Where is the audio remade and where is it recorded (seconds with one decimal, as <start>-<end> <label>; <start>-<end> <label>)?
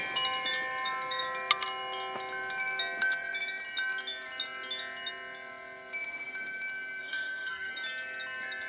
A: 0.0-7.0 recorded; 7.0-7.7 remade; 7.7-8.7 recorded